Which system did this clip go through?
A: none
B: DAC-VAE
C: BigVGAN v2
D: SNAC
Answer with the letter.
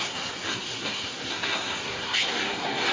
D